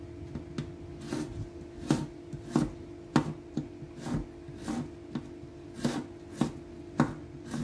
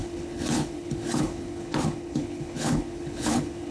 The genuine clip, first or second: first